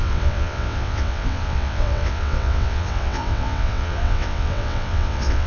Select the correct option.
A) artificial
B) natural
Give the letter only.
A